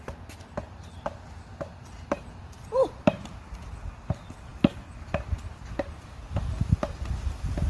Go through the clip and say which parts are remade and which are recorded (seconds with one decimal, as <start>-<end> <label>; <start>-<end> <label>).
0.0-2.8 recorded; 2.8-3.6 remade; 3.6-7.7 recorded